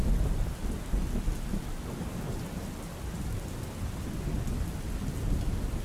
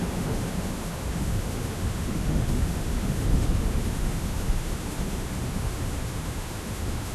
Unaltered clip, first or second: first